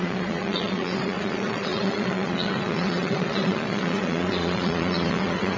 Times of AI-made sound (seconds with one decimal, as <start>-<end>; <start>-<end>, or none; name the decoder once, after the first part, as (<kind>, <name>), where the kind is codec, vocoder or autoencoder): 0.0-5.6 (vocoder, Vocos)